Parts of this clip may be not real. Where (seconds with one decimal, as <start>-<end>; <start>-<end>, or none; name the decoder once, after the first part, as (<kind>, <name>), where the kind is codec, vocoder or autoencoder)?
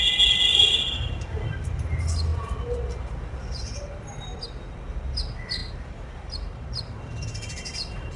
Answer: 0.5-1.5 (vocoder, BigVGAN v2); 5.6-6.7